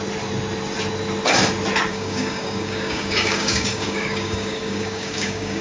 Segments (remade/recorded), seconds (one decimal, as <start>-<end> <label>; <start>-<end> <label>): 0.0-1.9 recorded; 1.9-5.6 remade